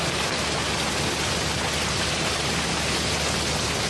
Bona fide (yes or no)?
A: yes